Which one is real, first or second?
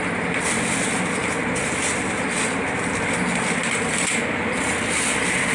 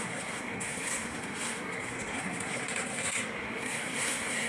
first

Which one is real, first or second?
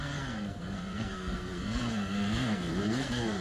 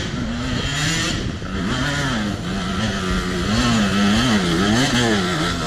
second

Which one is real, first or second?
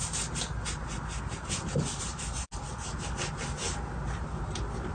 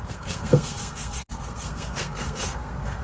first